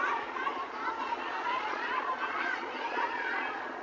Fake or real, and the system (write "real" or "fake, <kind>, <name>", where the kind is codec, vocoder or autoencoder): fake, vocoder, Vocos